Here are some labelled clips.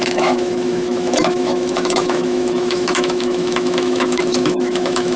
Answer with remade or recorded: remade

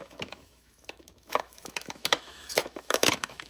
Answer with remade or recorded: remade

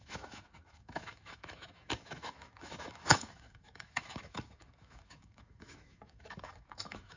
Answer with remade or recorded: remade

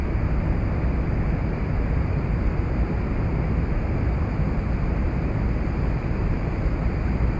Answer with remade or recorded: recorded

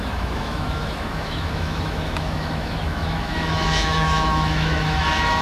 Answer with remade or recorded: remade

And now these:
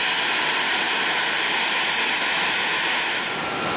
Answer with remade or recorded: recorded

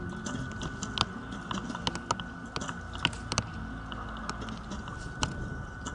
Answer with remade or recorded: recorded